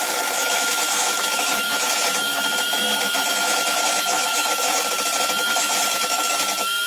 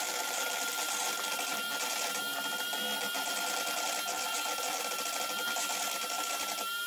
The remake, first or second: first